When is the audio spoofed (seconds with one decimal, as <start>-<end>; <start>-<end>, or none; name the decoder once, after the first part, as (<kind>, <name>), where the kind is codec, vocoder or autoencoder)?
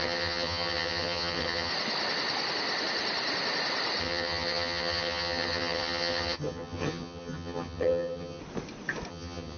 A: 0.0-1.7 (vocoder, HiFi-GAN); 4.0-8.4; 9.1-9.6